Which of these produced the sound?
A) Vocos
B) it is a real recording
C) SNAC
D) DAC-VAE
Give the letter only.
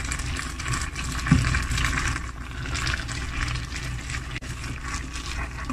B